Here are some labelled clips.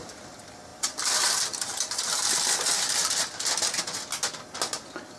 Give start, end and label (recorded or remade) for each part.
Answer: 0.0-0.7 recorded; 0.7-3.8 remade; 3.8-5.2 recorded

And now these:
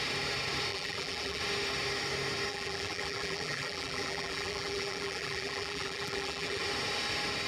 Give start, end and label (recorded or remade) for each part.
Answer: 0.0-0.7 recorded; 0.7-1.4 remade; 1.4-2.5 recorded; 2.5-6.6 remade; 6.6-7.5 recorded

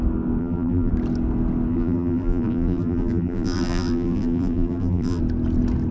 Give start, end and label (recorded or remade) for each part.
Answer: 0.0-0.4 recorded; 0.4-0.9 remade; 0.9-1.7 recorded; 1.7-5.2 remade; 5.2-5.9 recorded